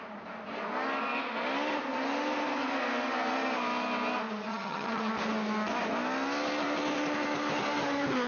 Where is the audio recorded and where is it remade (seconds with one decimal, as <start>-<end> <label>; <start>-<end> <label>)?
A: 0.0-4.5 recorded; 4.5-5.1 remade; 5.1-8.3 recorded